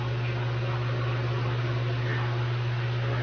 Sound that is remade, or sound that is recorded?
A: recorded